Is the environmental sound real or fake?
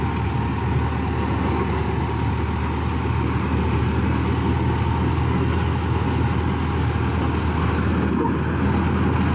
real